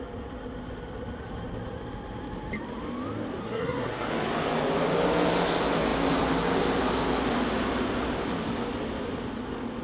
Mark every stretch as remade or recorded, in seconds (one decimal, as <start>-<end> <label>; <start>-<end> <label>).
0.0-3.4 recorded; 3.4-4.1 remade; 4.1-9.8 recorded